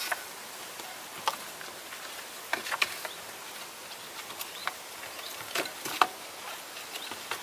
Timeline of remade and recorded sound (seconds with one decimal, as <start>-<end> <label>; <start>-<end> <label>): 0.0-7.4 recorded